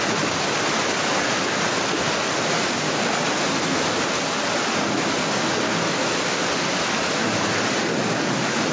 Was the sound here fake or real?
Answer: real